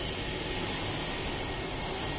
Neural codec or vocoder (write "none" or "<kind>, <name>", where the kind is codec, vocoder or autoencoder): none